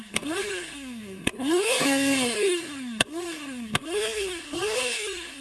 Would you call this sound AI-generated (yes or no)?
yes